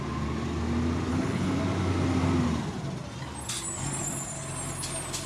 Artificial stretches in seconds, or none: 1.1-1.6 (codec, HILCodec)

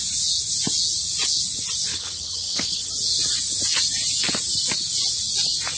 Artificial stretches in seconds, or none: 1.9-2.9 (codec, HILCodec)

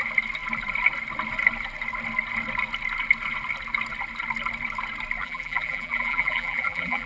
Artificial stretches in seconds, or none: 5.2-7.1 (vocoder, BigVGAN v2)